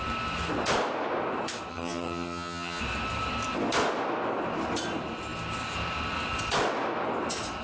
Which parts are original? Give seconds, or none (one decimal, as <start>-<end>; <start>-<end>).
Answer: 0.0-1.7; 2.8-7.6